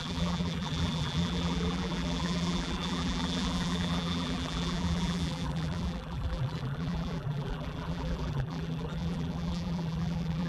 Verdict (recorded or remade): remade